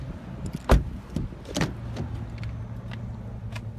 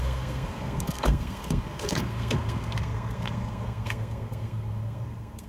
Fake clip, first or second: second